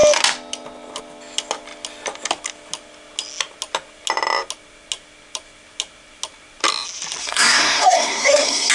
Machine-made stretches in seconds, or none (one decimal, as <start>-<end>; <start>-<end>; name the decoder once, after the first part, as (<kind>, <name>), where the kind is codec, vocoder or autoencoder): 7.2-8.7 (codec, SNAC)